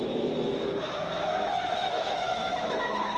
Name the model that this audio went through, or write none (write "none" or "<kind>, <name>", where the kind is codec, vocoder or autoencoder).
autoencoder, DAC-VAE